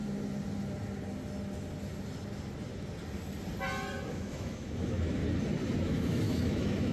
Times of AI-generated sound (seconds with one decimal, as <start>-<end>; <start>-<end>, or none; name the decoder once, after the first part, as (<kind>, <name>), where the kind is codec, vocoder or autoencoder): 4.1-5.2 (autoencoder, DAC-VAE); 5.8-6.9